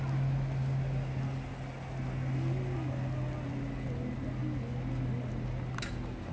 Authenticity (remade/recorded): recorded